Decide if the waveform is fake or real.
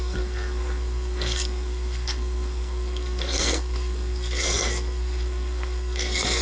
fake